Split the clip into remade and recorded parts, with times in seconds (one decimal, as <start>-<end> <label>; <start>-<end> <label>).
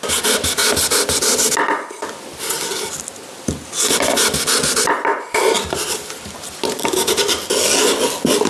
0.0-8.5 recorded